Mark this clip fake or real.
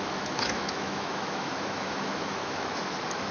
fake